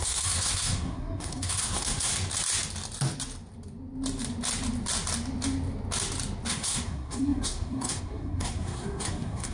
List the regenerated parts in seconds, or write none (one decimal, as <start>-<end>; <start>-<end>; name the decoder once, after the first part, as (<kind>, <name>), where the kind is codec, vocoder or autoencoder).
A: 0.0-2.1 (codec, SNAC); 6.5-9.5